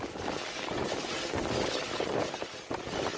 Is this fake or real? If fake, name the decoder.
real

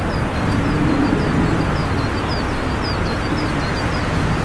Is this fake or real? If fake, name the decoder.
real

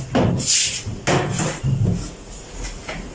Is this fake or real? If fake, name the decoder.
real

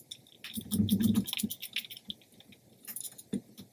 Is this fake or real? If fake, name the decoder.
real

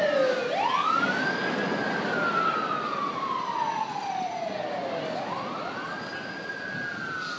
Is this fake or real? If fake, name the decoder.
real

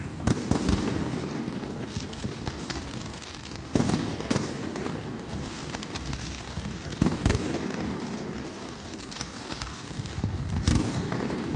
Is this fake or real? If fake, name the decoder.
fake, codec, DAC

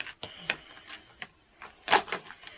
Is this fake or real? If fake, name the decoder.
real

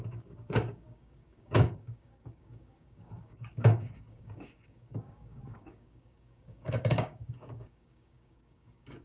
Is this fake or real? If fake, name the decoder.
fake, codec, DAC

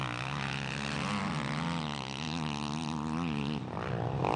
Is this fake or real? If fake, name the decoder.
real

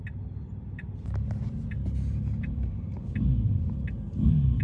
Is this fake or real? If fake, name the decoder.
real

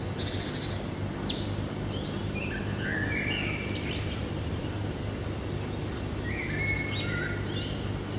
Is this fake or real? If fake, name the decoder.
real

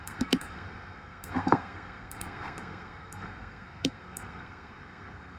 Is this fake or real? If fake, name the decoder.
fake, codec, SNAC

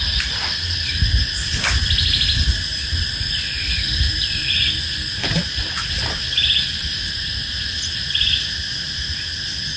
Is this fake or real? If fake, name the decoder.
real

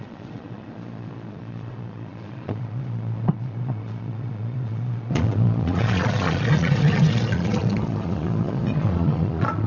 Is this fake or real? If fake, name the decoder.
fake, vocoder, Vocos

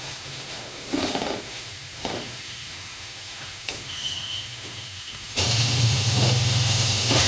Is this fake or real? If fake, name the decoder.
fake, autoencoder, DAC-VAE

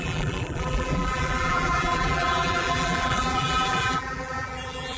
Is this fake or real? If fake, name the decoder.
fake, vocoder, BigVGAN v2